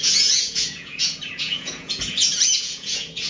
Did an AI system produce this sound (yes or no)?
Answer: yes